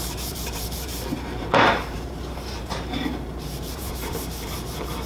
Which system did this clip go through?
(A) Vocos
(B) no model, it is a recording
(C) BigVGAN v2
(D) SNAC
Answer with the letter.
C